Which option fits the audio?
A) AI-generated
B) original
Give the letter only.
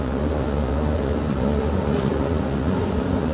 A